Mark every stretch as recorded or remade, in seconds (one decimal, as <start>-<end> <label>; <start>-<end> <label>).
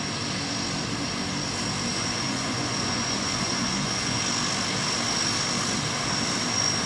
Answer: 0.0-1.9 recorded; 1.9-4.2 remade; 4.2-6.9 recorded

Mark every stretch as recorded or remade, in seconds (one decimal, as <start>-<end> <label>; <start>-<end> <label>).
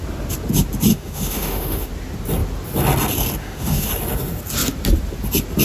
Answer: 0.0-0.9 recorded; 0.9-1.9 remade; 1.9-3.4 recorded; 3.4-3.9 remade; 3.9-5.6 recorded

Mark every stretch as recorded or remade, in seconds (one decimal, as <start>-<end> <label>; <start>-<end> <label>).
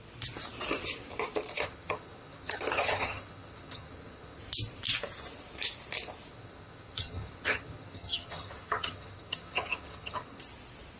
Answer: 0.0-1.5 recorded; 1.5-4.4 remade; 4.4-6.3 recorded; 6.3-10.4 remade; 10.4-11.0 recorded